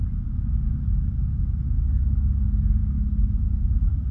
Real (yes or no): yes